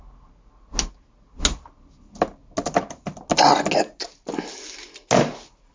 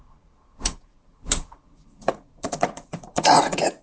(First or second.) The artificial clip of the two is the second